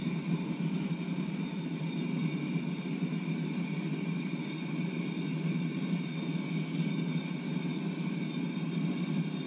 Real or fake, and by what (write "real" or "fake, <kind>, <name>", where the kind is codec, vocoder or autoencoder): real